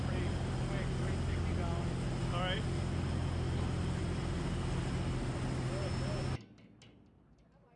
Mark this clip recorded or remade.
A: recorded